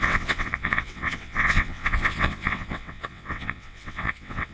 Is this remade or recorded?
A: remade